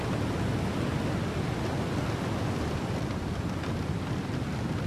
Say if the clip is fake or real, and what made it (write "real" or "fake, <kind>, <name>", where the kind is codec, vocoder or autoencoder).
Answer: real